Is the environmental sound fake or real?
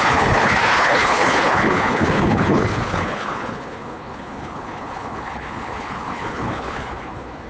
fake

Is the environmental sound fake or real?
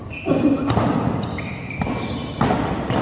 real